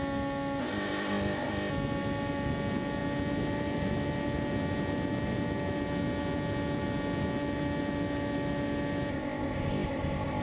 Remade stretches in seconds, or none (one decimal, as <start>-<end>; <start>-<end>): 0.6-1.7; 9.1-10.4